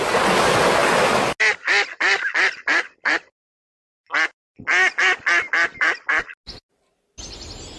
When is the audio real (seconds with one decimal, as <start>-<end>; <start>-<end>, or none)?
0.0-7.8